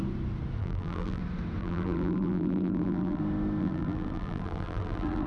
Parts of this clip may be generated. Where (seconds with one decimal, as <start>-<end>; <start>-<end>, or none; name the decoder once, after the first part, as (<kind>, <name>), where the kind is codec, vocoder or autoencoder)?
0.6-1.2 (vocoder, BigVGAN v2); 1.6-3.2; 3.6-5.3